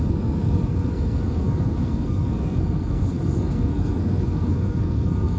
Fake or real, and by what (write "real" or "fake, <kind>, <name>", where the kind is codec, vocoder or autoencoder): fake, codec, SNAC